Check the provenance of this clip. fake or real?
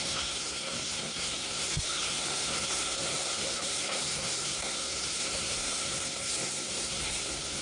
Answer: fake